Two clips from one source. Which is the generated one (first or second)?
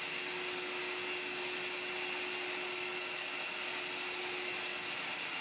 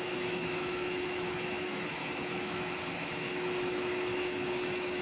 second